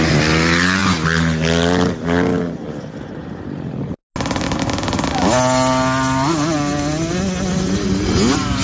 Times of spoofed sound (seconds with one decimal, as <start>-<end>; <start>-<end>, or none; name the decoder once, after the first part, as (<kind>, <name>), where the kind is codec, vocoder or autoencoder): none